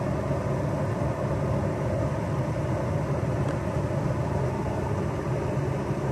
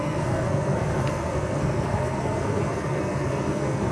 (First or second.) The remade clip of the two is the second